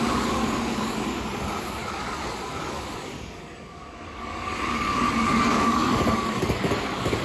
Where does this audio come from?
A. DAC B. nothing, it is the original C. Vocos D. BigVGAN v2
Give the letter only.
A